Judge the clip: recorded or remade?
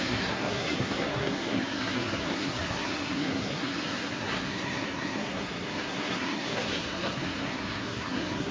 remade